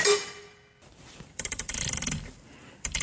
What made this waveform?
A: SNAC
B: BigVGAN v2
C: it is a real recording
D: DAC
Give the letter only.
B